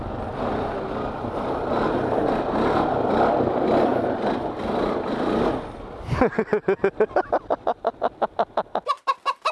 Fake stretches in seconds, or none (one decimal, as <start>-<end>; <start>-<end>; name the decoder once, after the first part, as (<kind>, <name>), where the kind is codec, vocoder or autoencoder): none